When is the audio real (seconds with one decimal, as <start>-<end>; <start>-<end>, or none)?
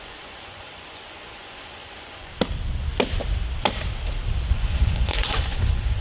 2.3-4.5